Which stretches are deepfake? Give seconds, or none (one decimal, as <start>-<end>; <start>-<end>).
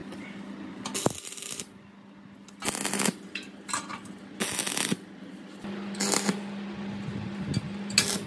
none